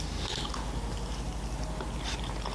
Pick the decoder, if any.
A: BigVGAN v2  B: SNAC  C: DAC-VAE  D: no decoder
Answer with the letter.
D